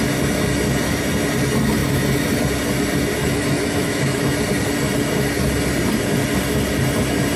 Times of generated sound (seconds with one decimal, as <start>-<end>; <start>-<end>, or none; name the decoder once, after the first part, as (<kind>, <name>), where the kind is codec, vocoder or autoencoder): 3.1-4.2 (autoencoder, DAC-VAE)